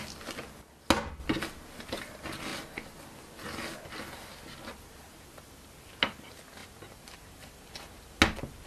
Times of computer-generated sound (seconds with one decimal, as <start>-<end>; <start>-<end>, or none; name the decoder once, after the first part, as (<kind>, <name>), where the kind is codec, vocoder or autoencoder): 6.6-8.2 (vocoder, BigVGAN v2)

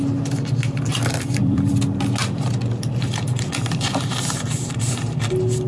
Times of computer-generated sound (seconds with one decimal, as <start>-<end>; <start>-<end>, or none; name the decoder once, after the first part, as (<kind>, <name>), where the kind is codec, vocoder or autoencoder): 0.9-1.7 (vocoder, BigVGAN v2); 2.2-5.2

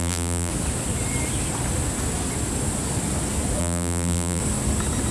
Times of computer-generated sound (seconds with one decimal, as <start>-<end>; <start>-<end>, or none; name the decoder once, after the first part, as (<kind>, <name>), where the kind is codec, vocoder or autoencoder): 0.0-0.5 (vocoder, BigVGAN v2); 3.6-4.4